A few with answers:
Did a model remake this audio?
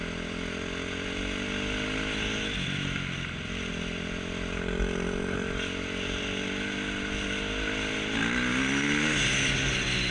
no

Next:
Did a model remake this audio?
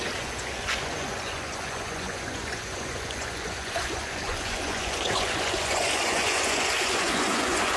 yes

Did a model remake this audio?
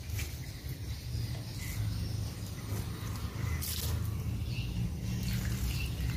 no